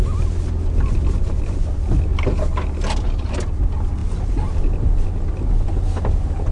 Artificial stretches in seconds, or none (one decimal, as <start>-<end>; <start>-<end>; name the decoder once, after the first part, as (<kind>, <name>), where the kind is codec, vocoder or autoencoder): none